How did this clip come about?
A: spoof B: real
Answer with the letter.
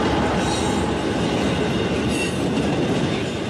B